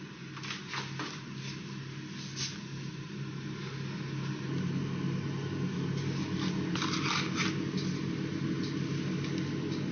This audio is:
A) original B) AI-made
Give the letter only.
A